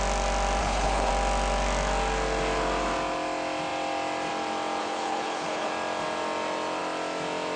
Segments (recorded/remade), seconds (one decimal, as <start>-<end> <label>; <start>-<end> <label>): 0.0-0.6 recorded; 0.6-1.1 remade; 1.1-4.8 recorded; 4.8-5.7 remade; 5.7-7.6 recorded